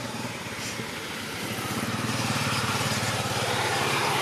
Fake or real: fake